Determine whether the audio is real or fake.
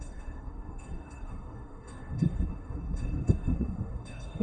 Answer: fake